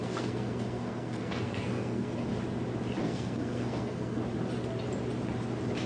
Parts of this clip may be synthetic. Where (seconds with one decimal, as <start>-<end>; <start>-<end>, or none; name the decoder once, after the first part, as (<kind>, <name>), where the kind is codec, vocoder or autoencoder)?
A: 0.0-2.3 (codec, SNAC); 3.0-4.2